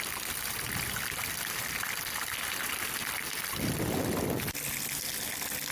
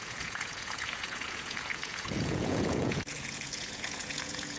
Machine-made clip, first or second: second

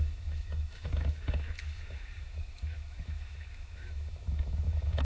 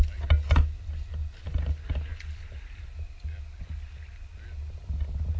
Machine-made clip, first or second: first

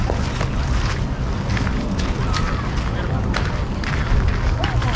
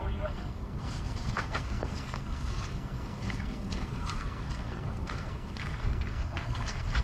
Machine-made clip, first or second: second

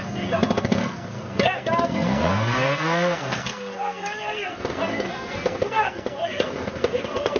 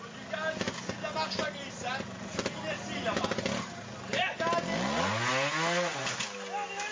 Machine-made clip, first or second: first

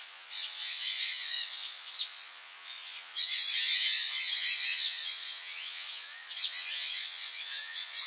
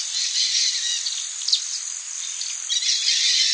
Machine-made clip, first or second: first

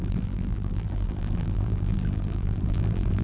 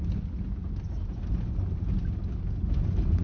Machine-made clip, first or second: first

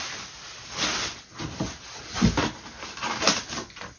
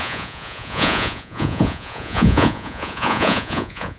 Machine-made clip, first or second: second